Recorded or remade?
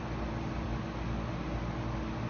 recorded